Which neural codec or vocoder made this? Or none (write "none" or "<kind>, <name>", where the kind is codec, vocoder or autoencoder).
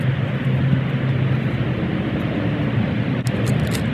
none